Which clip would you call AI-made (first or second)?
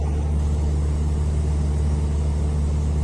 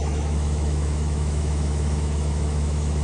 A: second